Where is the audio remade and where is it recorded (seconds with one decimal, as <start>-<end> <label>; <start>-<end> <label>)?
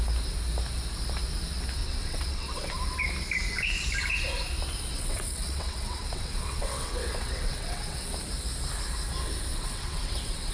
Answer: 0.0-1.8 recorded; 1.8-2.7 remade; 2.7-4.9 recorded; 4.9-8.1 remade; 8.1-9.5 recorded; 9.5-10.5 remade